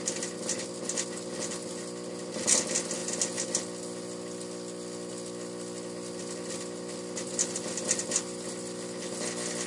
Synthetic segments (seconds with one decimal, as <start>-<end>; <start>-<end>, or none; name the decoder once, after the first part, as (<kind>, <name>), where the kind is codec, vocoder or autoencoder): none